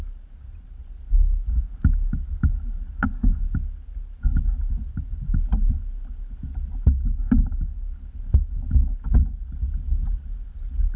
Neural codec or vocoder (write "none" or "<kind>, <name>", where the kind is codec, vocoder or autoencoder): none